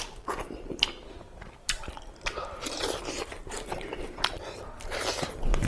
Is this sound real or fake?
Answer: fake